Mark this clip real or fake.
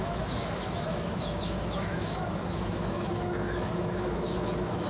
fake